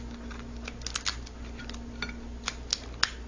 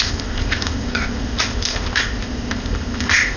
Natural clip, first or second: first